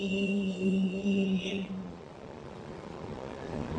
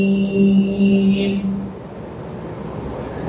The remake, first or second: first